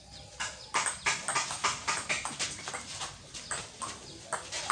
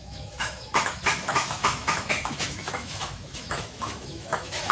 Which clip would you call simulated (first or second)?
second